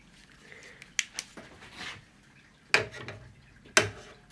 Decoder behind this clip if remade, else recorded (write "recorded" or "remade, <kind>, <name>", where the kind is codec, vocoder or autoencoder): recorded